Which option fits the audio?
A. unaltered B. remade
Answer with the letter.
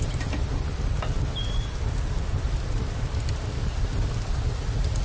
A